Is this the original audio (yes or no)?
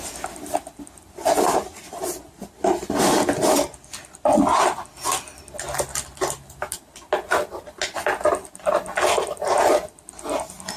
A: yes